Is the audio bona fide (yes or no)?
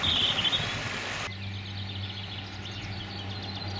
yes